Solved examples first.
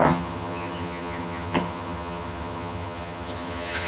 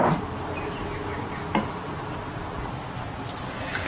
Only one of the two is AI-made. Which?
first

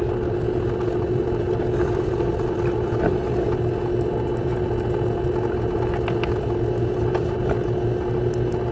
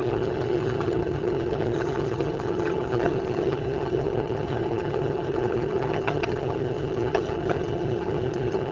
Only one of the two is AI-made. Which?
second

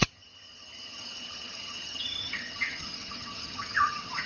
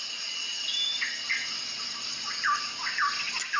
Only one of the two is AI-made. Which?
first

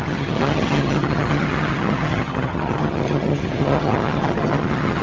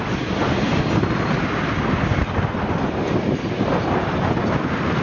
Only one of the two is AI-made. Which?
first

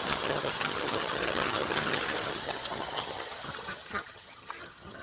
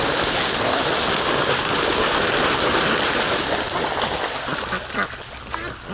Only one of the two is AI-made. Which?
first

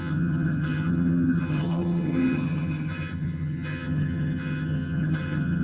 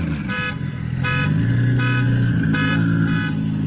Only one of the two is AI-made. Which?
first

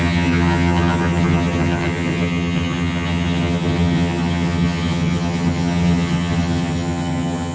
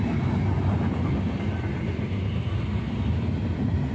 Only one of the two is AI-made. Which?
first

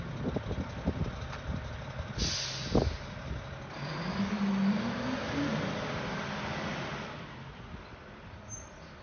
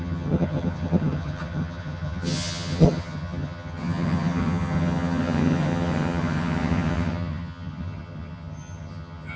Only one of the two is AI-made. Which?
second